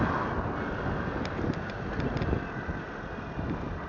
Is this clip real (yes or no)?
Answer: yes